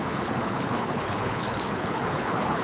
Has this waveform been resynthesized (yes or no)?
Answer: yes